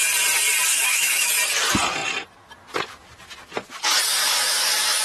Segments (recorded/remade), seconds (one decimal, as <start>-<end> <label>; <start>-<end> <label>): 0.0-0.7 recorded; 0.7-1.3 remade; 1.3-4.2 recorded; 4.2-5.0 remade

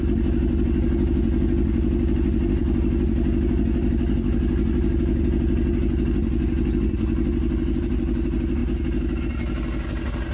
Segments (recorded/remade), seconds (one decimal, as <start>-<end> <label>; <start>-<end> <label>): 0.0-10.3 recorded

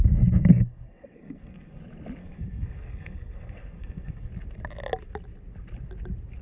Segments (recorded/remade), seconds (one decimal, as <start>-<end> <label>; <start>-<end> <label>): 0.0-0.5 recorded; 0.5-1.8 remade; 1.8-2.2 recorded; 2.2-4.3 remade; 4.3-6.4 recorded

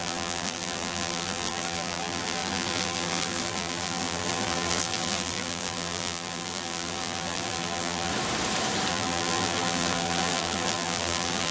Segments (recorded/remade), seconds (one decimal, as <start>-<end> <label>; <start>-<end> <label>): 0.0-8.1 remade; 8.1-8.9 recorded; 8.9-11.5 remade